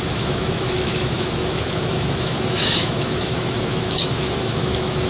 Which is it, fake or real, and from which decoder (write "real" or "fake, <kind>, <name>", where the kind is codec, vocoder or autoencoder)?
fake, autoencoder, DAC-VAE